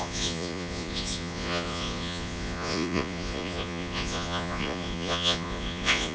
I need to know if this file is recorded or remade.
remade